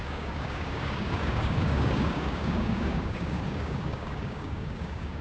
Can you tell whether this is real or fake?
fake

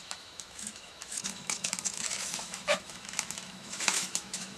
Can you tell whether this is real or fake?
fake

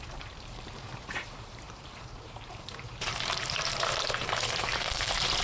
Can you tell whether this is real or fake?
fake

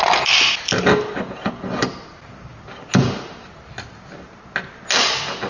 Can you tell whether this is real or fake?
real